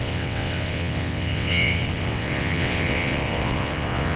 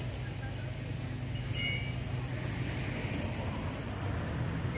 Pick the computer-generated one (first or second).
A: first